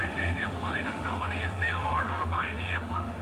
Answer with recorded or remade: remade